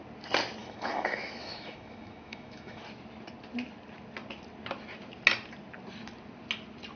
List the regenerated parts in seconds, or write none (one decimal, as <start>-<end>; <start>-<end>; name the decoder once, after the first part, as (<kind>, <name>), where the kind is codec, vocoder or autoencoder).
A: 0.6-2.8 (autoencoder, DAC-VAE)